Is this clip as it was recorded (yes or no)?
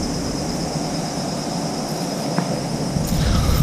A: yes